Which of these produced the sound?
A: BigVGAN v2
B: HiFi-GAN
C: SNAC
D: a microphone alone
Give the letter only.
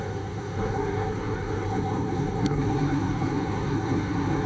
C